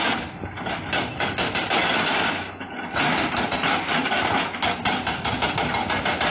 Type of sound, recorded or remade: recorded